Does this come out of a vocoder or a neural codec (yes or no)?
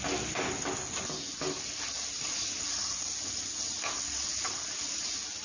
no